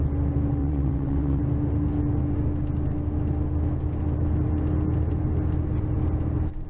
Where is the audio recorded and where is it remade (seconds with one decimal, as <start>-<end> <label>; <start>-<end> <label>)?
0.0-0.6 recorded; 0.6-1.4 remade; 1.4-6.7 recorded